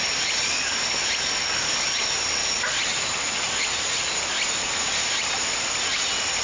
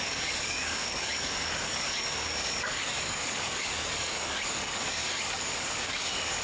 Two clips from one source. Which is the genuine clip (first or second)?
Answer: first